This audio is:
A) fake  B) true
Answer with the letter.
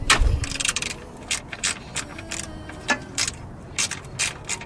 B